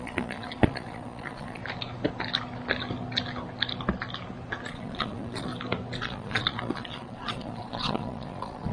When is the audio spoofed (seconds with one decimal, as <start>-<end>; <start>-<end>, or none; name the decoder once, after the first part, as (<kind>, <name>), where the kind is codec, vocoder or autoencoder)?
0.0-1.6 (vocoder, Vocos); 4.7-5.5; 6.0-8.7